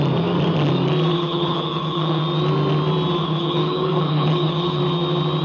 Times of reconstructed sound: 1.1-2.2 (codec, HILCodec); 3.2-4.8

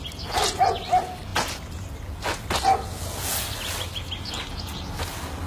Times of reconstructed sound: none

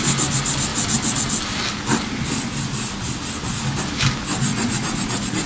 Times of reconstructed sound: 4.5-5.5 (vocoder, Vocos)

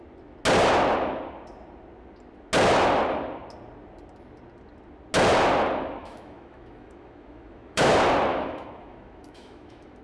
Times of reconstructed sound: 6.0-7.9 (autoencoder, DAC-VAE); 8.3-10.0

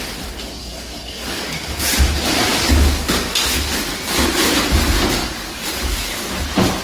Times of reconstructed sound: 0.6-1.8 (codec, DAC); 2.5-3.3; 5.2-6.2